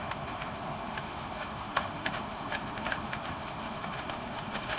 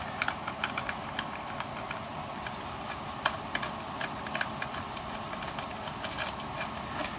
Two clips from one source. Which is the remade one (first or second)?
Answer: first